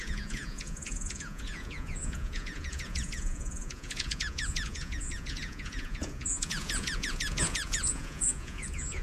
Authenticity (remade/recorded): remade